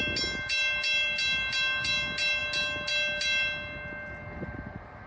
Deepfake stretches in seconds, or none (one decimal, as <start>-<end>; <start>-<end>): none